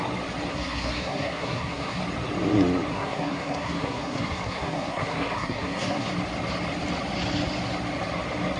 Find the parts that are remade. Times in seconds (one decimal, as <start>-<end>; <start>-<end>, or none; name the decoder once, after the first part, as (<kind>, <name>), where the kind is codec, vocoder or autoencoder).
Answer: 0.5-2.0 (codec, SNAC); 2.9-6.1